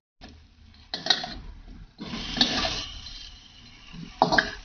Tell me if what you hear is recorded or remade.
recorded